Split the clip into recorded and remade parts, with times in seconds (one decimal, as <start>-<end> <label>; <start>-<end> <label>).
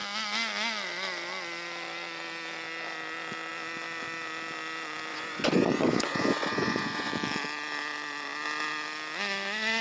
0.0-5.1 recorded; 5.1-7.1 remade; 7.1-9.8 recorded